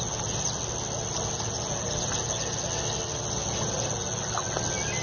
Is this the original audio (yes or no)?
yes